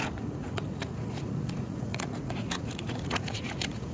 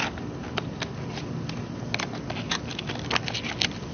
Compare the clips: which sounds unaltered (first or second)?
second